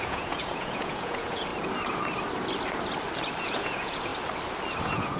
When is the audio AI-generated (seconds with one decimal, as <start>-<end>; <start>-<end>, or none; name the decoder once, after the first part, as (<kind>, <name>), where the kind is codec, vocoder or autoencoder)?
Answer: 0.0-1.5 (vocoder, Vocos); 3.4-4.1; 4.8-5.2